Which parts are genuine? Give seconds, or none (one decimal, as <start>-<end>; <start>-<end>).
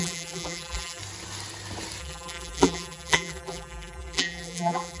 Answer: 1.0-2.0